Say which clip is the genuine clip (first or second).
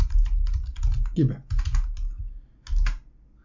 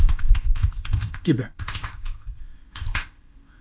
first